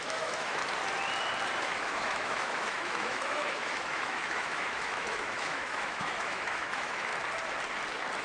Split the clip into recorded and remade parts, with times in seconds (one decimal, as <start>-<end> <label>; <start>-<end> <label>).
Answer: 0.0-0.6 remade; 0.6-1.6 recorded; 1.6-7.1 remade; 7.1-8.2 recorded